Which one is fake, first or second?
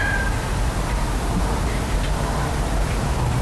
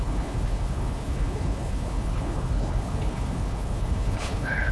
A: second